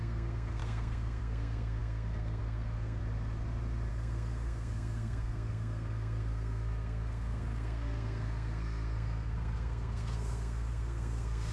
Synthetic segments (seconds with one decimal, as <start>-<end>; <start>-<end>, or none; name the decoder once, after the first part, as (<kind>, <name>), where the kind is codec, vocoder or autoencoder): 0.0-3.0 (codec, SNAC); 3.9-11.5